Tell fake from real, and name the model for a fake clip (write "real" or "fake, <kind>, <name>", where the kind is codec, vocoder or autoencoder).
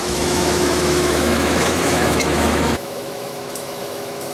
fake, autoencoder, DAC-VAE